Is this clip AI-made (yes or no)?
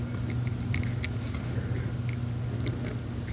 no